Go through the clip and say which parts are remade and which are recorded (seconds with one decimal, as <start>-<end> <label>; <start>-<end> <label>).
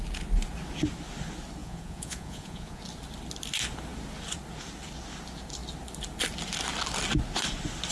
0.0-1.6 recorded; 1.6-2.8 remade; 2.8-7.9 recorded